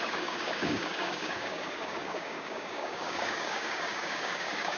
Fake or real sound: fake